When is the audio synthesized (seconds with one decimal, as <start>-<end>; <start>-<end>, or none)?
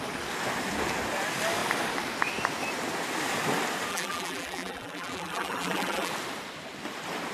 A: 3.9-6.1